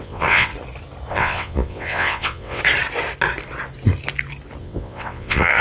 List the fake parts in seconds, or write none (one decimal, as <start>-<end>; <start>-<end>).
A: 0.0-0.5; 1.1-2.6; 4.6-5.6